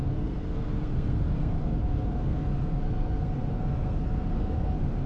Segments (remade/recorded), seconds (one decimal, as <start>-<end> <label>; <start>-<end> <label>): 0.0-5.1 remade